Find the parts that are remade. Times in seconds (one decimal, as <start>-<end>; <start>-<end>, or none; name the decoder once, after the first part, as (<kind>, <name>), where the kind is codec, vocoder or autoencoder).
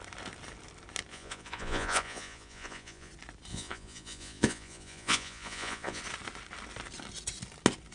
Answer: 1.1-3.1 (vocoder, Vocos); 3.5-6.0